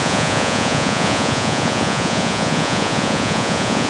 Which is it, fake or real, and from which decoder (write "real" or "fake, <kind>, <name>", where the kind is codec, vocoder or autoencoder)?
fake, vocoder, Vocos